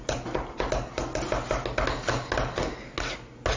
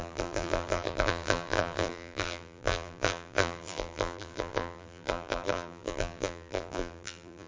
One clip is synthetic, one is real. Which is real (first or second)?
first